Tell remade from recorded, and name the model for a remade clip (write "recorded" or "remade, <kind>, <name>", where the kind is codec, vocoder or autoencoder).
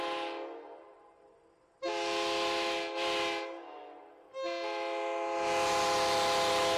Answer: recorded